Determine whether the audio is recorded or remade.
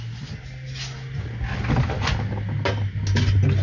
recorded